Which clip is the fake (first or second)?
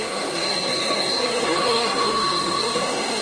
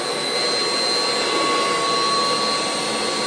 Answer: first